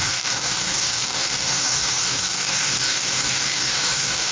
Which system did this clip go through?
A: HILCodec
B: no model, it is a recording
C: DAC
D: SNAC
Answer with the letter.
C